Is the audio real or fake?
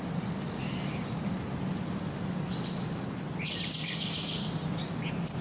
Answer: real